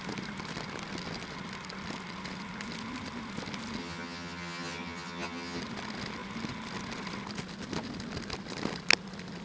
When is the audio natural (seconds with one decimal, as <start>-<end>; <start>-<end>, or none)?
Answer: 0.0-3.8; 5.6-9.4